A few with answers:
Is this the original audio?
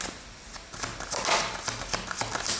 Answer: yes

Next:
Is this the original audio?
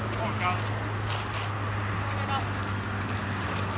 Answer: yes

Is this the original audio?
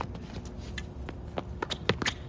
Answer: yes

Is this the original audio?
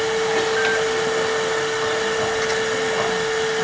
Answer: yes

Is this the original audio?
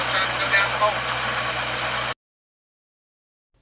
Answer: yes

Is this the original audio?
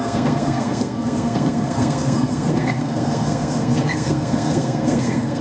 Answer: no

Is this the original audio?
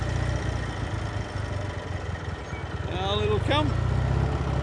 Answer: yes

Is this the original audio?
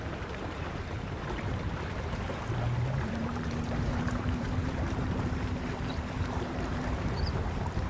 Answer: no